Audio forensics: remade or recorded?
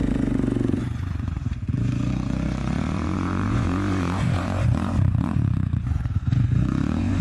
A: remade